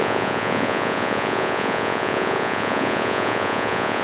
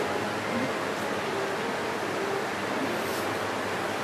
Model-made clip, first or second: first